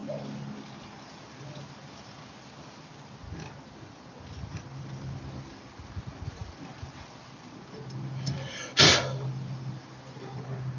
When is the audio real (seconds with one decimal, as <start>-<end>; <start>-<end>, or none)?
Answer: 0.0-10.8